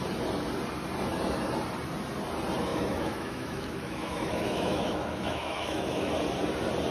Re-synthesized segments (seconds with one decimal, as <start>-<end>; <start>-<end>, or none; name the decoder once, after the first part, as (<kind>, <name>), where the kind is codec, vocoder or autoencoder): 2.7-6.1 (autoencoder, DAC-VAE)